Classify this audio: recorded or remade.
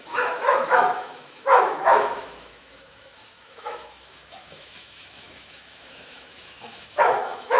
remade